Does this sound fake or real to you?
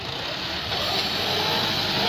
real